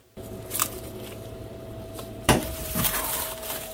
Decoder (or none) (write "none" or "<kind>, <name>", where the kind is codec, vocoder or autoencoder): vocoder, BigVGAN v2